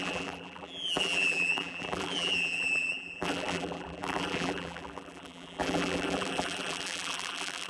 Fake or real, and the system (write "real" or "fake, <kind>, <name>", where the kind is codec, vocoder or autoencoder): fake, vocoder, BigVGAN v2